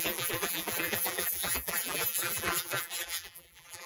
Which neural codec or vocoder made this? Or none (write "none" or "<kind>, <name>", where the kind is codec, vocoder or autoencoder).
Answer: vocoder, BigVGAN v2